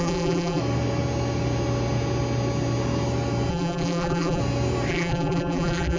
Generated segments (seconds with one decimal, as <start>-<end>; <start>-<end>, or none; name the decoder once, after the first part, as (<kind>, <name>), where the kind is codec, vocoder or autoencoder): 0.0-0.6 (vocoder, BigVGAN v2); 3.5-4.4; 4.9-6.0